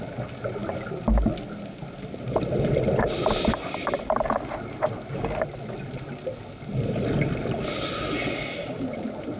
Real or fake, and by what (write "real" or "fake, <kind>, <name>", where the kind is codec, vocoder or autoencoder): real